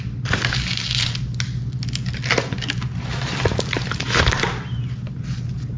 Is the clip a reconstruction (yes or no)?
no